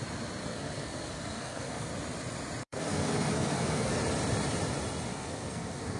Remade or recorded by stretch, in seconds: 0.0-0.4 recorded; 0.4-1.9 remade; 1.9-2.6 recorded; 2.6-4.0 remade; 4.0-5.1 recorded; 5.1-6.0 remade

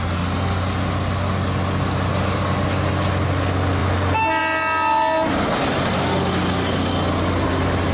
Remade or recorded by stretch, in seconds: 0.0-7.9 recorded